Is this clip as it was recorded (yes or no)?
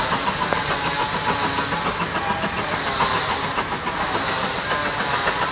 yes